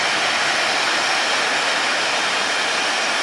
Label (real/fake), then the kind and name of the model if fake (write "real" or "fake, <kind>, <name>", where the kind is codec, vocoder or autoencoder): real